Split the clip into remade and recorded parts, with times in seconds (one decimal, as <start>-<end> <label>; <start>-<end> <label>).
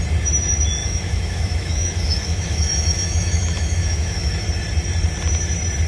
0.0-0.8 recorded; 0.8-4.3 remade; 4.3-5.9 recorded